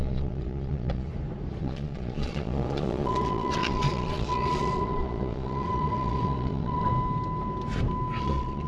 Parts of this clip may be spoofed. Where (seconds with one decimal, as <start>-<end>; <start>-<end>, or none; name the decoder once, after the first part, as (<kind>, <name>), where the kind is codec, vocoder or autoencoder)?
0.0-1.1 (vocoder, Vocos); 1.6-6.9; 8.2-8.7